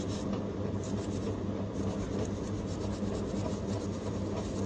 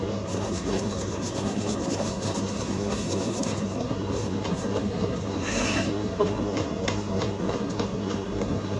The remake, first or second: second